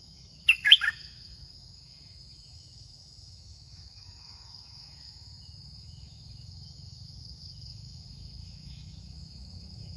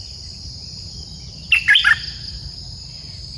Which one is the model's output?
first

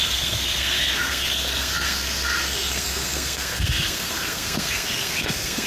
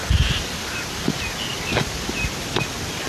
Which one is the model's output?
first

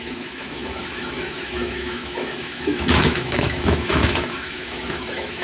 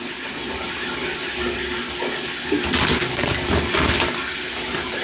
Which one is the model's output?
first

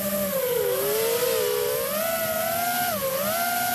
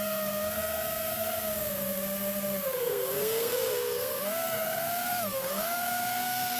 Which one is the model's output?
second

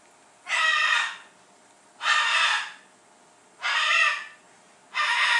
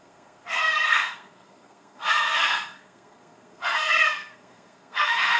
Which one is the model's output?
second